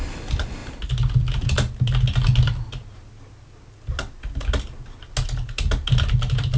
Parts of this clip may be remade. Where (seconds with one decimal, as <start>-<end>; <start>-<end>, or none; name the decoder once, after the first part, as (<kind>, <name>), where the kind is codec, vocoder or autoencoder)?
none